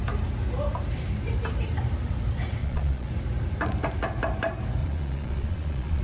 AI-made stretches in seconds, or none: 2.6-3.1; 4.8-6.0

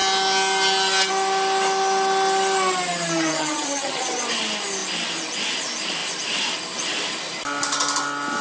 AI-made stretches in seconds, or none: 3.3-4.3